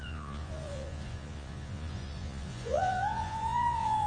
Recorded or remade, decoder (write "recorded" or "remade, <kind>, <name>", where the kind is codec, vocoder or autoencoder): remade, vocoder, Vocos